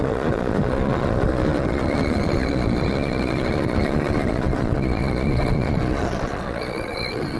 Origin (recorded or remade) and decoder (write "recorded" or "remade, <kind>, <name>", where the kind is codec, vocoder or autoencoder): remade, vocoder, Vocos